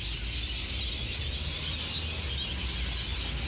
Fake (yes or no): no